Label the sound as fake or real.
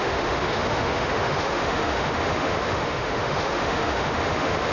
fake